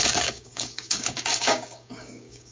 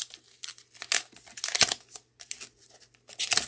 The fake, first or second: first